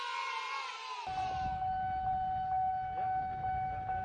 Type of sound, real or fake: real